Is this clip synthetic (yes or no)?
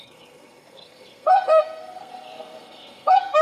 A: yes